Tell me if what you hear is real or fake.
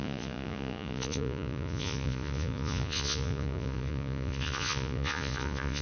fake